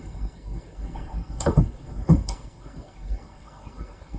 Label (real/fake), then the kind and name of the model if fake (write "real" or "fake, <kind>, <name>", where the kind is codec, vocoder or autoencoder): fake, codec, SNAC